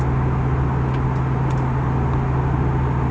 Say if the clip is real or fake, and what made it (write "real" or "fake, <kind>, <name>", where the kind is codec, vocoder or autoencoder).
real